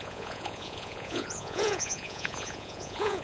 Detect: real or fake fake